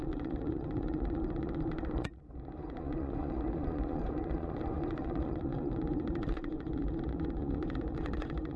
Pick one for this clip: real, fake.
fake